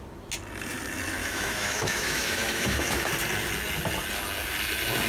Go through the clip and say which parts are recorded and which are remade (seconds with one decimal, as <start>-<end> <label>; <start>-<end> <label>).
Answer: 0.0-1.2 recorded; 1.2-3.1 remade; 3.1-5.1 recorded

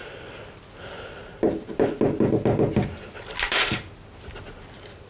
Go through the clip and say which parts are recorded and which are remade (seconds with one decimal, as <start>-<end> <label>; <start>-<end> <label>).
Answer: 0.0-5.1 recorded

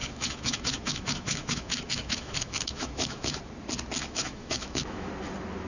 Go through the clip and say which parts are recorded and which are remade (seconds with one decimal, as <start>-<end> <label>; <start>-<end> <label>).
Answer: 0.0-3.4 remade; 3.4-4.0 recorded; 4.0-5.1 remade; 5.1-5.7 recorded

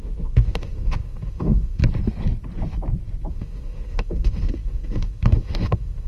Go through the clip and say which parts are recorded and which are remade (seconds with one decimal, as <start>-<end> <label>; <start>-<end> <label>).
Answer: 0.0-1.8 remade; 1.8-3.3 recorded; 3.3-6.1 remade

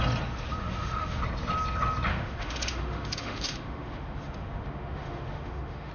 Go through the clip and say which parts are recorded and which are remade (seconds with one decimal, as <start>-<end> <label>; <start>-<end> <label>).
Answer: 0.0-0.6 recorded; 0.6-1.2 remade; 1.2-2.1 recorded; 2.1-5.9 remade

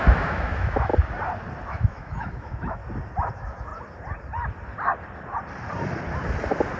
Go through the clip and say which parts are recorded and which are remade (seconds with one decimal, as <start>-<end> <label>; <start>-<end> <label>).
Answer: 0.0-0.9 remade; 0.9-1.7 recorded; 1.7-2.8 remade; 2.8-3.3 recorded; 3.3-3.7 remade; 3.7-6.8 recorded